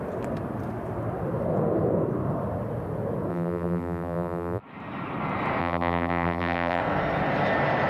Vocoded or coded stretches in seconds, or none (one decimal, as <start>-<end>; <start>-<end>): 3.3-4.6; 5.6-6.8